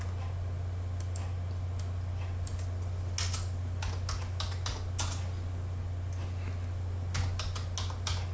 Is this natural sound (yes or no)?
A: yes